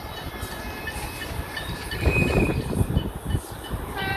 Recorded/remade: remade